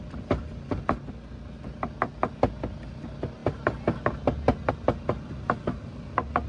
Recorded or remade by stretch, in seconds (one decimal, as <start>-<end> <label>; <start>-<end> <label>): 0.0-6.5 recorded